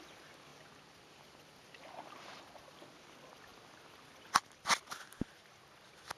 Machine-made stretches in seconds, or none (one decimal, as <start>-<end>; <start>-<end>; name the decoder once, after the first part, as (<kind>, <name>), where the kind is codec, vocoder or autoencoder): none